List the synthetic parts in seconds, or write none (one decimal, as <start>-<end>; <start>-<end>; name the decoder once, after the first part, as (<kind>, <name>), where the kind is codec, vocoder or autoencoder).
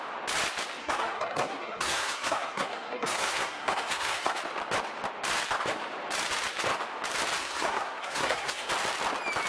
0.8-4.4 (codec, SNAC); 7.4-8.7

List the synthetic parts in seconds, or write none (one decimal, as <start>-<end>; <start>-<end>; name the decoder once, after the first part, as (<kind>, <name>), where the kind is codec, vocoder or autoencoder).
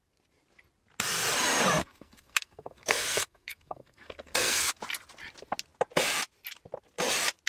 1.8-4.7 (codec, SNAC)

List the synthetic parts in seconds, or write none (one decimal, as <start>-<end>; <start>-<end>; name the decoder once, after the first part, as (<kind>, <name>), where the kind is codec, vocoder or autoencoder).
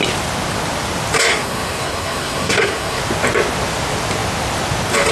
1.3-3.0 (codec, SNAC)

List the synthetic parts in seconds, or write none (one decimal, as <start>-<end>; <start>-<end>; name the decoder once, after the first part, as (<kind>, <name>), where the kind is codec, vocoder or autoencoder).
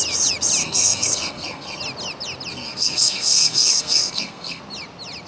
0.6-1.8 (codec, SNAC); 2.5-4.6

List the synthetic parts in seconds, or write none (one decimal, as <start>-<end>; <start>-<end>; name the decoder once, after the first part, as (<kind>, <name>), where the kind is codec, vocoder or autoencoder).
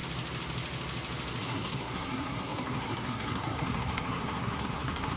1.4-5.2 (codec, SNAC)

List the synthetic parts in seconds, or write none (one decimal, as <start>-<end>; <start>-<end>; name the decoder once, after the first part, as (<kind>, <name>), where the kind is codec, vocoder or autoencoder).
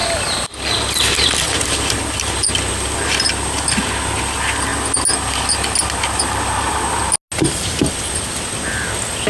none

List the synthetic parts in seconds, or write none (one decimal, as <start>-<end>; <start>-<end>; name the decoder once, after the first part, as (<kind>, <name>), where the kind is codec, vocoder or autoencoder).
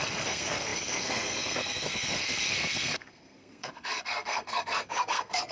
0.0-5.5 (codec, SNAC)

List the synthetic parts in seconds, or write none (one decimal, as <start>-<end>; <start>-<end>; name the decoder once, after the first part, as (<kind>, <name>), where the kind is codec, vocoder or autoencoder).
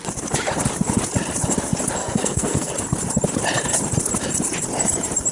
2.0-2.7 (codec, SNAC)